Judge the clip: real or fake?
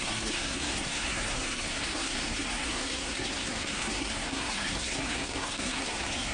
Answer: fake